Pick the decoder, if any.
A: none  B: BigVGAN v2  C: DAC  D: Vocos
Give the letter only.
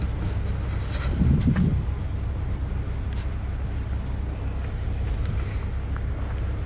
A